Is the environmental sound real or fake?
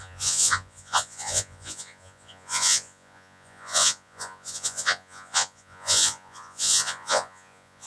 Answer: fake